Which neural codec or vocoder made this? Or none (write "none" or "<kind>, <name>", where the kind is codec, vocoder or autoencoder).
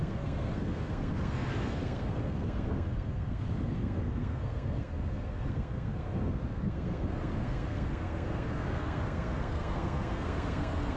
codec, SNAC